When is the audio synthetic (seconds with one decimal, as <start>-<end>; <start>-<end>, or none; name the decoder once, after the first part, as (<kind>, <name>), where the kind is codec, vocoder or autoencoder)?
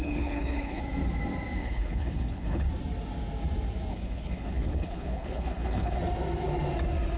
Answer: 0.0-0.8 (codec, HILCodec); 1.6-2.7; 3.9-6.0